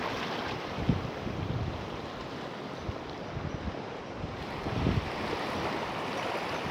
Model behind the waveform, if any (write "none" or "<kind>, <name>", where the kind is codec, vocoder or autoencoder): none